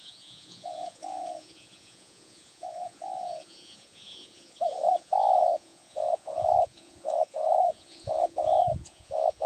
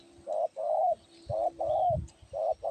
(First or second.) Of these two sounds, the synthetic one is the first